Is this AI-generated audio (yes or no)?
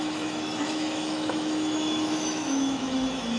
yes